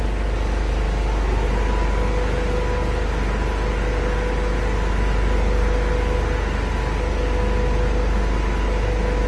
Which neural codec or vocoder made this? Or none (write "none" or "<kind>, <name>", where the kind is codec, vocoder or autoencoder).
none